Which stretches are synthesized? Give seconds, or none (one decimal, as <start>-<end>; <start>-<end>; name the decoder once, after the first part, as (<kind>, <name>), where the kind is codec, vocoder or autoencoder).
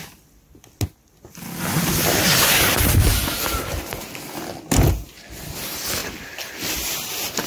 none